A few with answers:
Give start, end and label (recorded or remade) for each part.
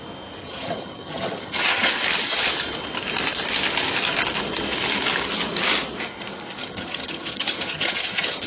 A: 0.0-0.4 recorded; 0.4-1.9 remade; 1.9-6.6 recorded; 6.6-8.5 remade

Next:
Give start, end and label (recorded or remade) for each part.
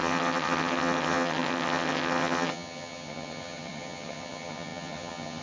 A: 0.0-5.4 remade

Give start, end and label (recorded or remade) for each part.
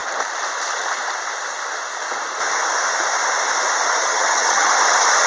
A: 0.0-4.0 recorded; 4.0-4.7 remade; 4.7-5.3 recorded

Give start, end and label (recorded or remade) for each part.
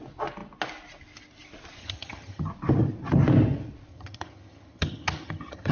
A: 0.0-1.8 recorded; 1.8-2.5 remade; 2.5-3.9 recorded; 3.9-5.7 remade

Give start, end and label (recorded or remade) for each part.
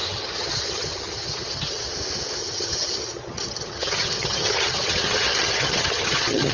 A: 0.0-1.9 remade; 1.9-2.4 recorded; 2.4-6.5 remade